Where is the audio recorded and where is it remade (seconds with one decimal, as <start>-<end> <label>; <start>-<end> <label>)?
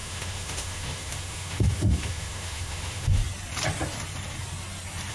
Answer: 0.0-3.2 remade; 3.2-5.1 recorded